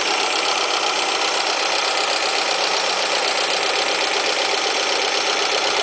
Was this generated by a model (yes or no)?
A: no